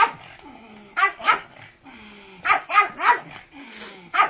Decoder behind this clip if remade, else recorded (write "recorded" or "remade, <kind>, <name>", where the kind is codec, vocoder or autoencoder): recorded